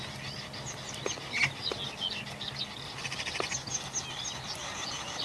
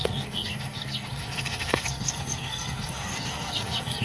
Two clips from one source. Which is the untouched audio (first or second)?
first